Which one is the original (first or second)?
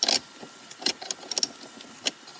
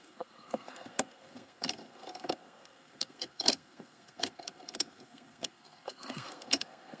first